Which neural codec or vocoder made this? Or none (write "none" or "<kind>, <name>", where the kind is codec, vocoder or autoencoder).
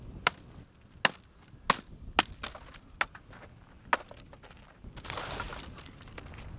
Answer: none